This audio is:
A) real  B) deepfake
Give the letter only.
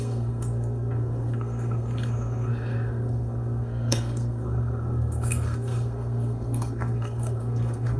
B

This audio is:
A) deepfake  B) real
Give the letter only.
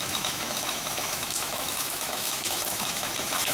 A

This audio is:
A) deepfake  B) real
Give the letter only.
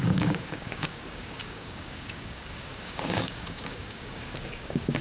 A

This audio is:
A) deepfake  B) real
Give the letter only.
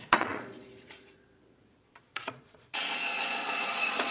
A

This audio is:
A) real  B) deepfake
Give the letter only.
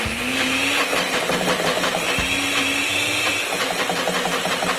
A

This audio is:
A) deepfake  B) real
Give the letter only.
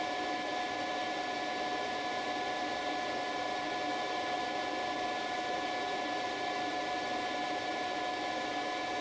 B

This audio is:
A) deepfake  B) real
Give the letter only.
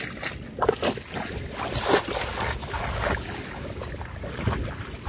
B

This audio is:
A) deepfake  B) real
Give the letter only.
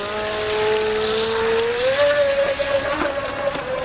B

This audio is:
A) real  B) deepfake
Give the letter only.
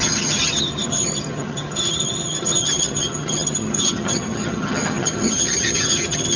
B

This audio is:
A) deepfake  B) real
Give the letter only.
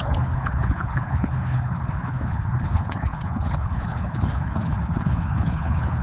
A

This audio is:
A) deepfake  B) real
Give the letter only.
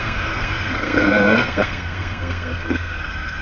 A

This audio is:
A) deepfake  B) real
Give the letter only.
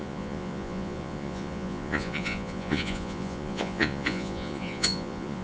A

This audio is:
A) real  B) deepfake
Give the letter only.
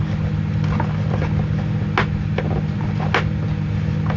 A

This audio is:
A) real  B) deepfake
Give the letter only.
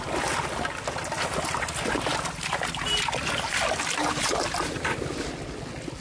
A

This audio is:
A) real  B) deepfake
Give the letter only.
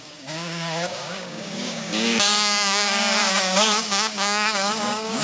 B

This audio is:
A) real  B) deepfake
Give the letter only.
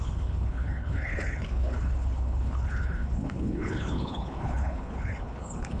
B